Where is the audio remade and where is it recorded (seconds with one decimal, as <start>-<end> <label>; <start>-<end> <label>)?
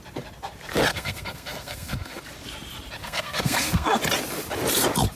0.0-0.9 recorded; 0.9-2.2 remade; 2.2-3.0 recorded; 3.0-4.0 remade; 4.0-5.2 recorded